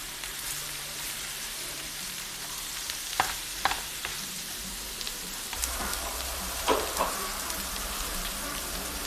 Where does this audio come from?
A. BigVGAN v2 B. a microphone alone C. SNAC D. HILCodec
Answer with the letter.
A